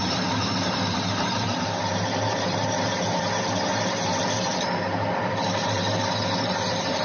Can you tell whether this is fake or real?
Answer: fake